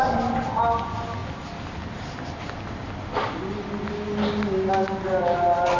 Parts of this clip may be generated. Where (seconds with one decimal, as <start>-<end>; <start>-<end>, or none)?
none